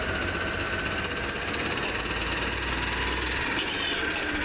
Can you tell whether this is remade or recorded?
recorded